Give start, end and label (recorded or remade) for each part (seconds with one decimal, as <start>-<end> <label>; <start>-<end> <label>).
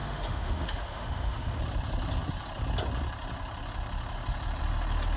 0.0-1.6 remade; 1.6-5.2 recorded